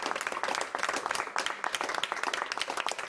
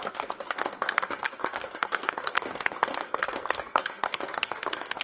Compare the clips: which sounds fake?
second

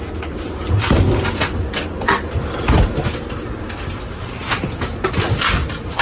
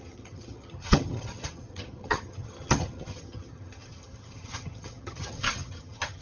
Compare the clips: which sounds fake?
second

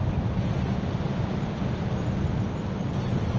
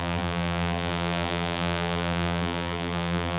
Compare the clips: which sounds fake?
second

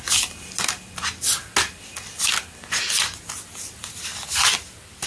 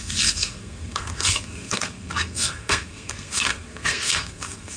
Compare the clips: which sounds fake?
second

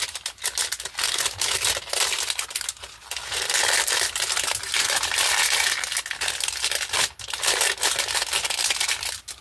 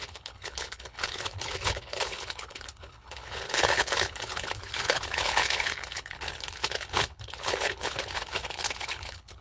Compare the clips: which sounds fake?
second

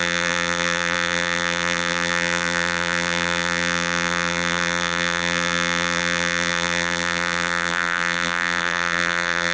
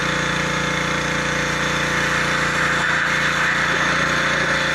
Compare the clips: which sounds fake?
first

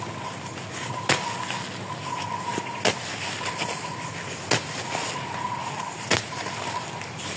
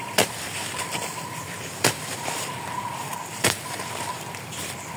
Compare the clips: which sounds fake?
second